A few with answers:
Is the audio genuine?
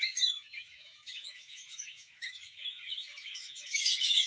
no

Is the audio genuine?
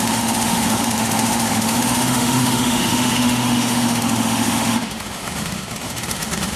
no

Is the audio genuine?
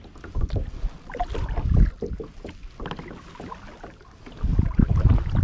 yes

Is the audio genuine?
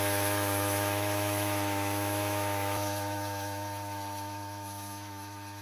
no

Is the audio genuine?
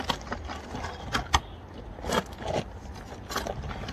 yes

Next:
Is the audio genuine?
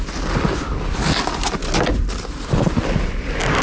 yes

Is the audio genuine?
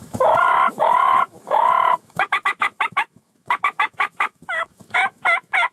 no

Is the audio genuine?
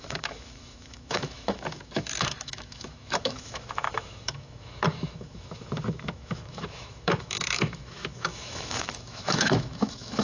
no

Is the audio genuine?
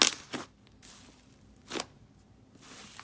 yes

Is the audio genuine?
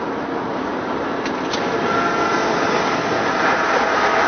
yes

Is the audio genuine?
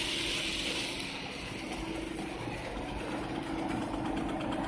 yes